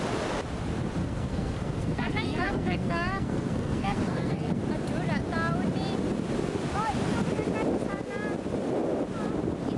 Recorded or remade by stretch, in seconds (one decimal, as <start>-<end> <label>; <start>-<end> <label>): 0.0-1.0 recorded; 1.0-4.6 remade; 4.6-9.8 recorded